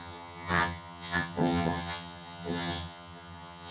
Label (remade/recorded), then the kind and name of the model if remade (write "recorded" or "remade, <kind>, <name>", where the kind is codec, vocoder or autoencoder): remade, vocoder, HiFi-GAN